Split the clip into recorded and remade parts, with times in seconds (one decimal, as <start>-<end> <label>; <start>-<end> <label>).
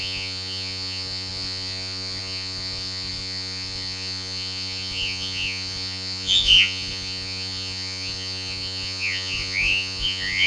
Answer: 0.0-10.5 remade